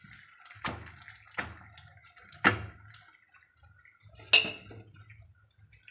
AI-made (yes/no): no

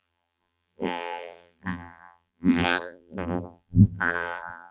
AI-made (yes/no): yes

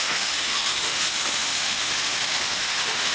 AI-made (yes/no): yes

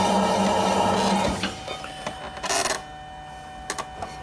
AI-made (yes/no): no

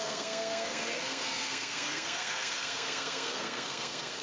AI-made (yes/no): yes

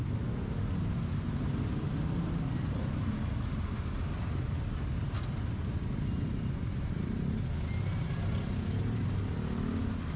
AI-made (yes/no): no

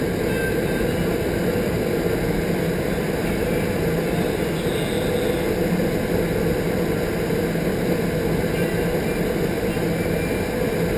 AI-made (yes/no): no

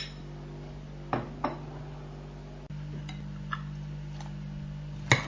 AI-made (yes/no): no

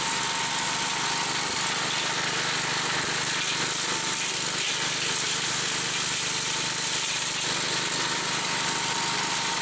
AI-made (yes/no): no